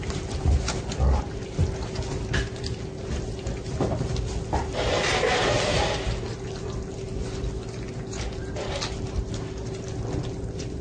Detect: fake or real real